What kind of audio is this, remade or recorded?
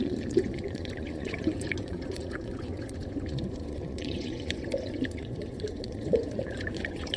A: remade